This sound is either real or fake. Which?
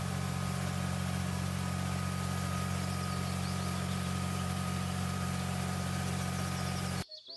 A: fake